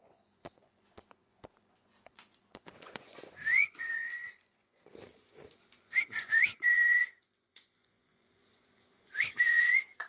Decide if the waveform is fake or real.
fake